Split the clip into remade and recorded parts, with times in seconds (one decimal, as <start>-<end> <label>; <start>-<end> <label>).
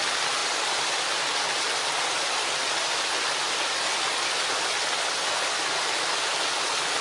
0.0-7.0 recorded